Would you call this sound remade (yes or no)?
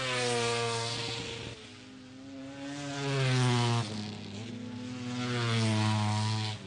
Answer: no